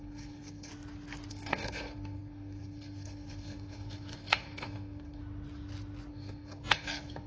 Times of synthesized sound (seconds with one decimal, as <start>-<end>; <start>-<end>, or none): 0.0-0.7; 1.3-5.2; 6.1-7.3